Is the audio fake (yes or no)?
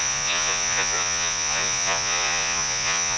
yes